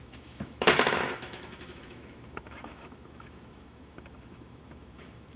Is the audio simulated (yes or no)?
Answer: yes